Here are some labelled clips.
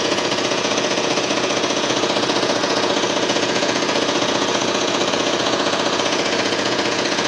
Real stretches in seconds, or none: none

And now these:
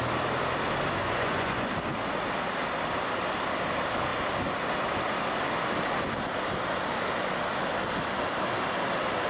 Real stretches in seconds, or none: 0.0-1.0; 1.7-9.3

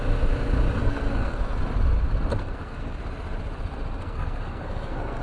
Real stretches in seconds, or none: 0.0-0.8; 1.4-2.3; 3.0-4.0

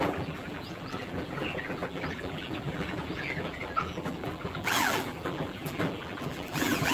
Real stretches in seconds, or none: none

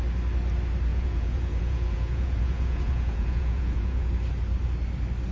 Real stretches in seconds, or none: 0.0-0.9; 4.1-5.3

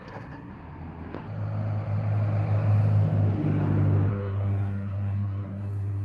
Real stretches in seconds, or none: 0.5-4.1

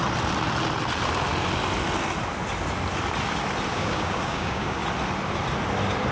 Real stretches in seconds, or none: 0.0-3.7; 4.8-6.1

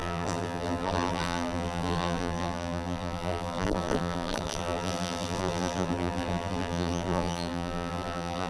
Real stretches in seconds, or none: none